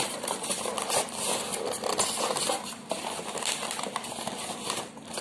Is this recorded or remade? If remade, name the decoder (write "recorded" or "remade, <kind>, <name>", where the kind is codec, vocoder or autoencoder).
recorded